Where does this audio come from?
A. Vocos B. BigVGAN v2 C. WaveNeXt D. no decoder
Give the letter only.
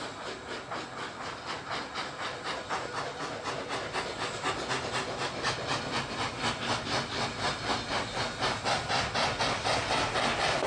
D